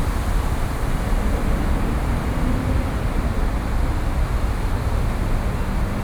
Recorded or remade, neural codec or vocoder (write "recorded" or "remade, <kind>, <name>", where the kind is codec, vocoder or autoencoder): recorded